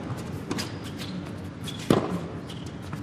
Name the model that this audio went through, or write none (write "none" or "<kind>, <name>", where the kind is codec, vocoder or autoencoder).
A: none